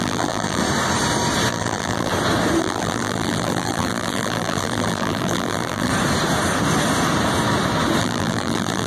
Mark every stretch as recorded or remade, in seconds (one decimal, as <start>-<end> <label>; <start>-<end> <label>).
0.0-0.6 remade; 0.6-1.5 recorded; 1.5-2.1 remade; 2.1-2.6 recorded; 2.6-5.9 remade; 5.9-8.0 recorded; 8.0-8.9 remade